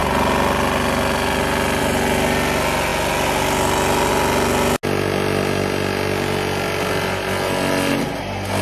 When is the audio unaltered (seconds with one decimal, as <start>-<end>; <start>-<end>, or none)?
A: 0.0-8.6